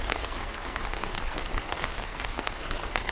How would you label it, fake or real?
fake